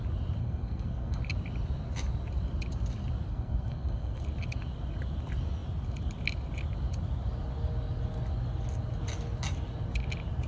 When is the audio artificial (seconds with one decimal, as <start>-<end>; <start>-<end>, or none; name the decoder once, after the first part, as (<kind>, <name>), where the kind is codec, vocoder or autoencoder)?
0.4-1.2 (codec, SNAC); 3.3-4.2